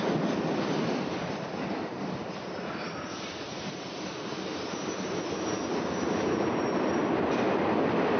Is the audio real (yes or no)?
yes